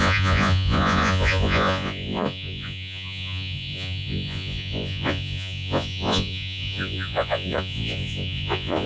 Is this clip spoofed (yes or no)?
yes